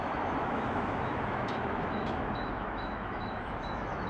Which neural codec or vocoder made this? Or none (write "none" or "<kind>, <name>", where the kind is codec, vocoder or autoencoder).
autoencoder, DAC-VAE